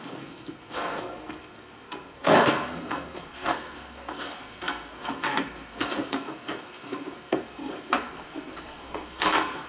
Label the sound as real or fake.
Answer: fake